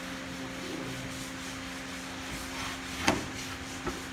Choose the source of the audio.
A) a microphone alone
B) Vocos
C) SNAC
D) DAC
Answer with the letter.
A